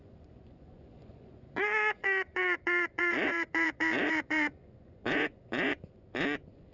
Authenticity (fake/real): fake